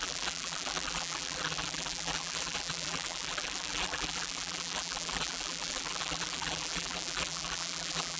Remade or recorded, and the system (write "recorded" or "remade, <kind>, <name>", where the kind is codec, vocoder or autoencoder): remade, vocoder, BigVGAN v2